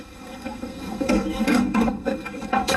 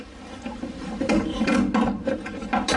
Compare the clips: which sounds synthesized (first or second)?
first